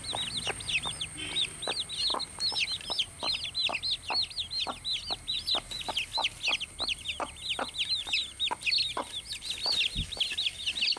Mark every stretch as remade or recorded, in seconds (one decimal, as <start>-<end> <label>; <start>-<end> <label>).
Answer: 0.0-11.0 recorded